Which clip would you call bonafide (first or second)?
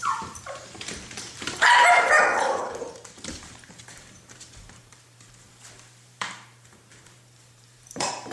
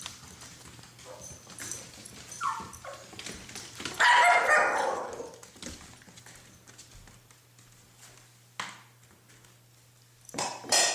second